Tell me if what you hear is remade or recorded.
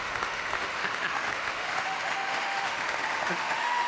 remade